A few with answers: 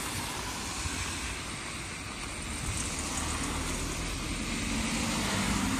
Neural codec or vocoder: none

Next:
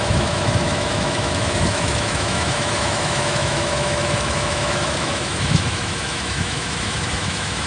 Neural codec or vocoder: autoencoder, DAC-VAE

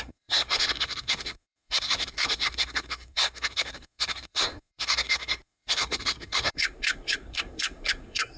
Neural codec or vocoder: codec, SNAC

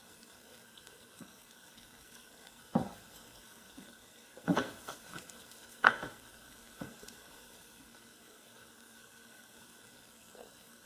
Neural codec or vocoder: codec, SNAC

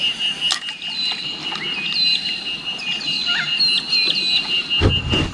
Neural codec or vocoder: none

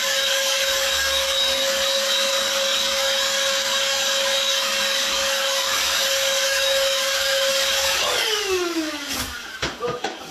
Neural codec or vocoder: codec, DAC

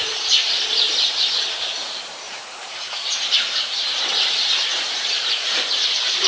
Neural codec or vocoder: vocoder, BigVGAN v2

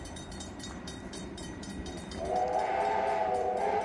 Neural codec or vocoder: vocoder, BigVGAN v2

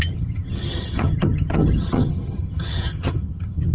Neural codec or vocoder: vocoder, HiFi-GAN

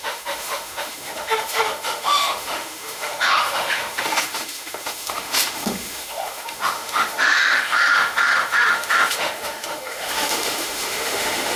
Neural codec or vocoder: autoencoder, DAC-VAE